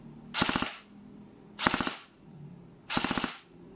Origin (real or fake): real